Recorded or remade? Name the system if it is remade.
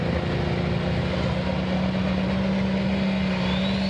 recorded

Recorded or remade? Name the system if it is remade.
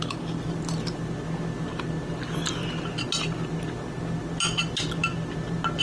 recorded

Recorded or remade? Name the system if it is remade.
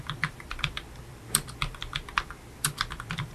remade, vocoder, BigVGAN v2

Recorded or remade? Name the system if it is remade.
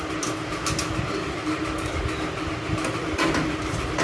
recorded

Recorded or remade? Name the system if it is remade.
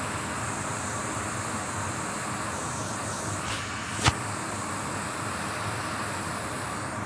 recorded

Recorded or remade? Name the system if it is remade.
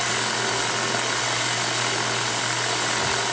recorded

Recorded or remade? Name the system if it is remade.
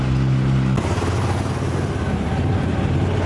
recorded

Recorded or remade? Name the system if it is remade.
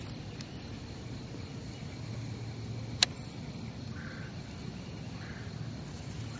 recorded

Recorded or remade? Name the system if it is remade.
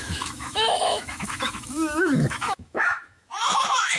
remade, autoencoder, DAC-VAE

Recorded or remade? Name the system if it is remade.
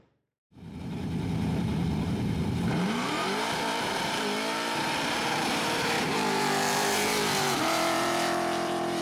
remade, vocoder, BigVGAN v2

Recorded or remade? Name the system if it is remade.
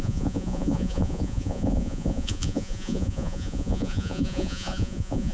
remade, vocoder, Vocos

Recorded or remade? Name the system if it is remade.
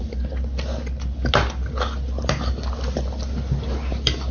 recorded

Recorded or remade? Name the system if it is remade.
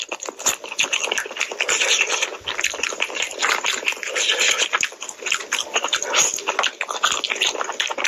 recorded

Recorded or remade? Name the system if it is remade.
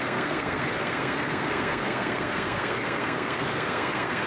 remade, codec, SNAC